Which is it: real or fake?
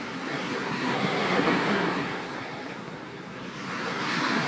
fake